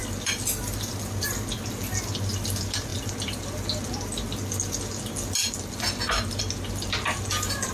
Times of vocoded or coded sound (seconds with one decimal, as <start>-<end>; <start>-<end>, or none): none